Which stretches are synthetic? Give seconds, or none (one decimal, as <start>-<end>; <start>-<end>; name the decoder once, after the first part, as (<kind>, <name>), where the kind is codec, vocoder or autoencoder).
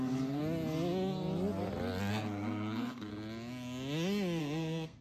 0.0-0.4 (codec, SNAC); 2.1-3.1; 4.4-5.0